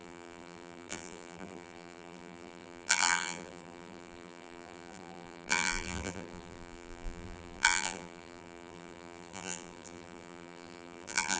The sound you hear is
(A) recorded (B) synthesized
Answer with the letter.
B